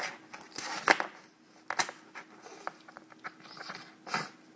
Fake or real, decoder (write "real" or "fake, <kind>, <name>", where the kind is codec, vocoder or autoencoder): real